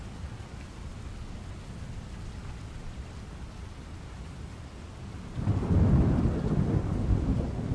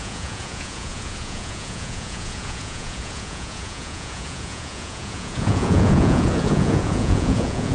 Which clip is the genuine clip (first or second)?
first